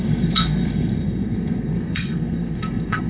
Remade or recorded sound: remade